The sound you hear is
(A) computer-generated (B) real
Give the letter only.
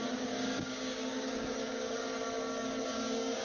A